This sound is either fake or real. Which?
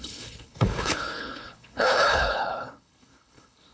fake